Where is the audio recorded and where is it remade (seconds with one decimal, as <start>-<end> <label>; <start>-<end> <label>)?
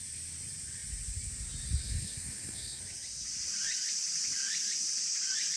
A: 0.0-1.8 recorded; 1.8-2.8 remade; 2.8-5.6 recorded